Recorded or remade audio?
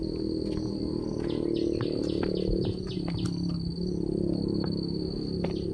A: recorded